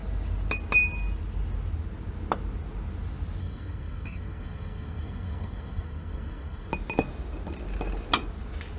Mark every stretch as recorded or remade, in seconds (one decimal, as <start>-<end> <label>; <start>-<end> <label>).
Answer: 0.0-3.4 recorded; 3.4-6.7 remade; 6.7-8.8 recorded